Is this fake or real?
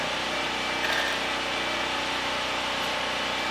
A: real